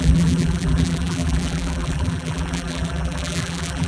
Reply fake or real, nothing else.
fake